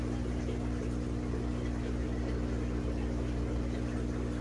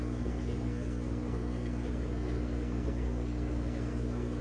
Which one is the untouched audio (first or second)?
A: first